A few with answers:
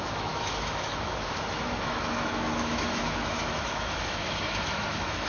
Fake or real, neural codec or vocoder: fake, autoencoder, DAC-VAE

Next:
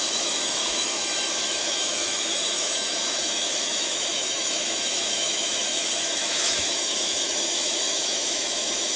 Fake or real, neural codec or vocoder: fake, autoencoder, DAC-VAE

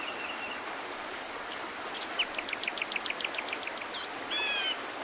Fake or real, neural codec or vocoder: real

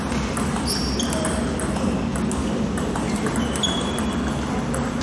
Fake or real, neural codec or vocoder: real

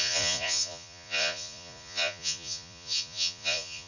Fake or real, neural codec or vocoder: fake, vocoder, Vocos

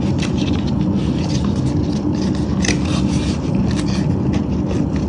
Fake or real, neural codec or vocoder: real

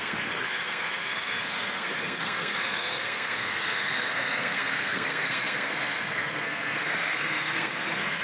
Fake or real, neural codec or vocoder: fake, codec, SNAC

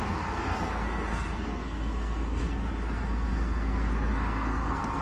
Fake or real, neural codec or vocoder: fake, codec, SNAC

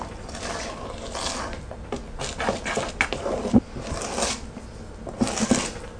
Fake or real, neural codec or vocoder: real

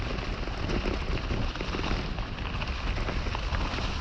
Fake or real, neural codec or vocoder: real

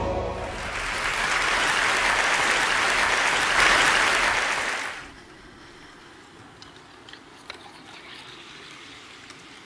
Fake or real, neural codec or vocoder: real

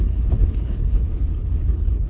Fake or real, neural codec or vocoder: fake, codec, HILCodec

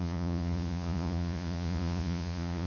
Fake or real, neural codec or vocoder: fake, vocoder, Vocos